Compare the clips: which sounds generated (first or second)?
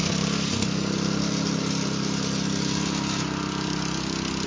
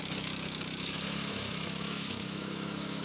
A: second